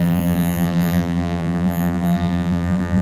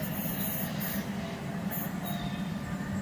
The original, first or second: second